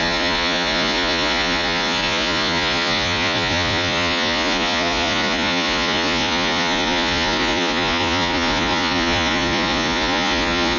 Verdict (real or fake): fake